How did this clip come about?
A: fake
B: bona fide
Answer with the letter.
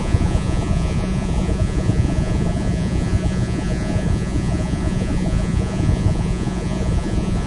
A